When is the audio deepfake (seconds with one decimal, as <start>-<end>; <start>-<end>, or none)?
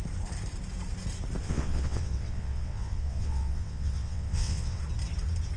1.4-4.8